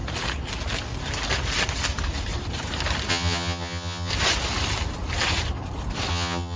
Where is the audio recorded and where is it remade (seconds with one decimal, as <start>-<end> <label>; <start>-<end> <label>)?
0.0-3.1 recorded; 3.1-4.1 remade; 4.1-6.1 recorded; 6.1-6.6 remade

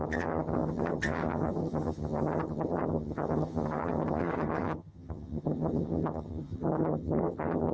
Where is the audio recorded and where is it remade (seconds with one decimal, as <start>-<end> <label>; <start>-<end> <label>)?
0.0-7.7 remade